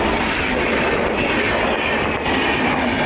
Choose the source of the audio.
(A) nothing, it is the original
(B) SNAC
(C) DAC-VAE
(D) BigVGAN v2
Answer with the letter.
A